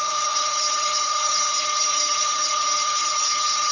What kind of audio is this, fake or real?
fake